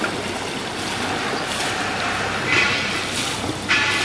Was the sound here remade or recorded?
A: remade